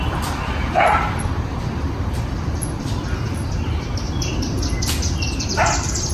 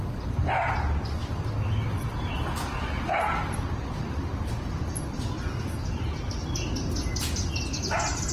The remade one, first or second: first